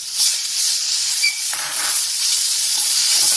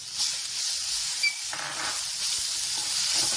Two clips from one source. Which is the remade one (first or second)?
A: first